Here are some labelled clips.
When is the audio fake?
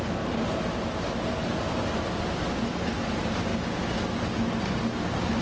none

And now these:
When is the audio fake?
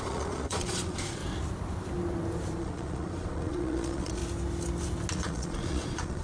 0.0-1.2 (vocoder, Vocos); 2.6-4.2; 5.1-6.2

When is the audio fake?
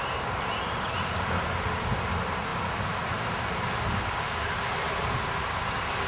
none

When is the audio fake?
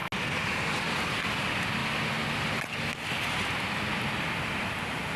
1.3-1.8 (vocoder, BigVGAN v2)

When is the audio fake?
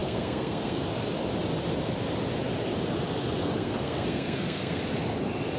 0.0-0.8 (codec, SNAC); 3.4-4.8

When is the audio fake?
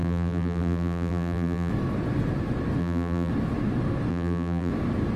0.0-1.7 (vocoder, BigVGAN v2); 2.8-3.3; 4.1-4.7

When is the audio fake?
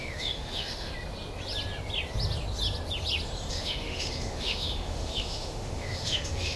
0.0-0.9 (autoencoder, DAC-VAE); 3.5-6.6